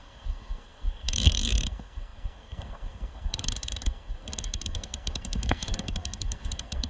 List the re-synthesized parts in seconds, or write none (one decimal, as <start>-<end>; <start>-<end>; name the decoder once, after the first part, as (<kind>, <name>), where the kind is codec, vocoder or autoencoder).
0.0-6.9 (codec, SNAC)